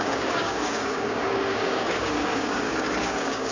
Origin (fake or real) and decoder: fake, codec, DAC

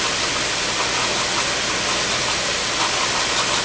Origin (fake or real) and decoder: real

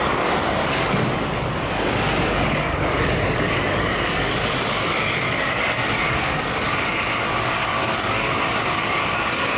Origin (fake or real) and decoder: fake, codec, DAC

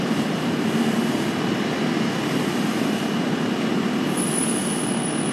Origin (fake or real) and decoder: real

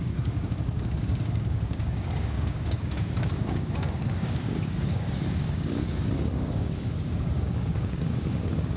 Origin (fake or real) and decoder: fake, codec, DAC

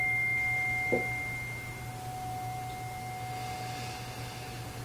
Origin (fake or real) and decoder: real